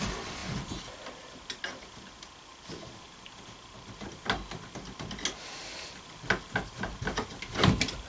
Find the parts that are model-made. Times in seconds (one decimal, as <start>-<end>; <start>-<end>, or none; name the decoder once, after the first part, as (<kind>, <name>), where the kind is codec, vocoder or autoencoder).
none